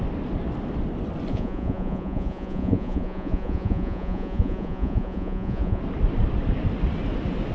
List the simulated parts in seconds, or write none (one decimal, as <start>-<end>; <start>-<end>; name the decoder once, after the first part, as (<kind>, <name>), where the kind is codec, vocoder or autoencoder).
1.3-5.8 (vocoder, Vocos)